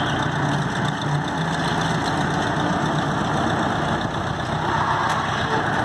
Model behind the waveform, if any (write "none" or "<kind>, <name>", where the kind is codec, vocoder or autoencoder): none